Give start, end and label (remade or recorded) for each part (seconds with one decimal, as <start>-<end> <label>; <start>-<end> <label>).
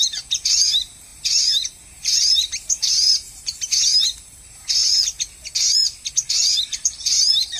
0.0-4.8 remade; 4.8-6.6 recorded; 6.6-7.6 remade